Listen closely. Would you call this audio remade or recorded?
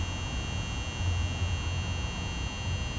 recorded